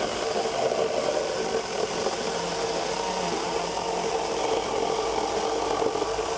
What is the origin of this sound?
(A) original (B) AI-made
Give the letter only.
A